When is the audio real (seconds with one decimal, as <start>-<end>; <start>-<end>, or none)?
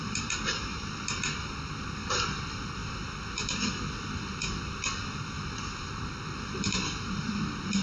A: 2.8-5.5